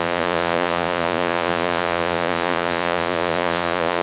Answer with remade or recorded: remade